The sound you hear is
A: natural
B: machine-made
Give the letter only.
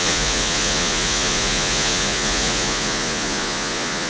B